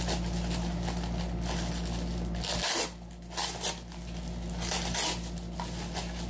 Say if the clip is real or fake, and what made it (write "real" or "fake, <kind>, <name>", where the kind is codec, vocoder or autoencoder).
real